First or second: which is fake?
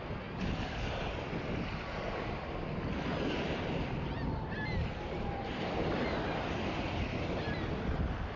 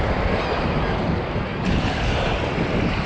second